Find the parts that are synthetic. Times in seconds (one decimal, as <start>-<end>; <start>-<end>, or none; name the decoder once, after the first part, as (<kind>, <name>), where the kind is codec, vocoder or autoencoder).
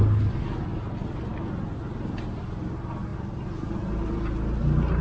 none